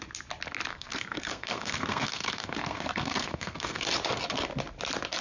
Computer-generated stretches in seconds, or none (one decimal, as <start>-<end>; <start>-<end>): 0.7-3.8